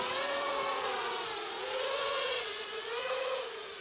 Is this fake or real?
fake